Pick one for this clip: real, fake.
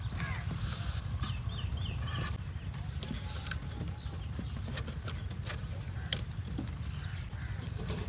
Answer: real